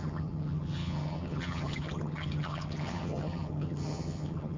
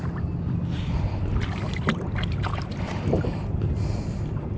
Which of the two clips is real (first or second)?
second